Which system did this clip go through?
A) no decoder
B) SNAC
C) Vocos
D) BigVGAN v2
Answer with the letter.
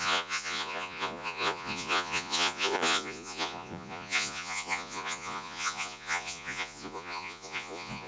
C